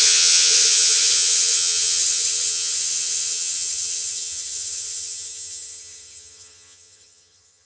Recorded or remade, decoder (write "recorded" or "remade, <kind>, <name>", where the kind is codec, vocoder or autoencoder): remade, vocoder, HiFi-GAN